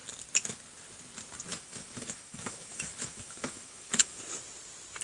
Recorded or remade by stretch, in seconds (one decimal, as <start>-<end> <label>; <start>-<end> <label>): 0.0-1.5 recorded; 1.5-4.2 remade; 4.2-5.0 recorded